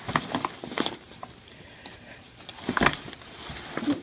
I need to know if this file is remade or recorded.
recorded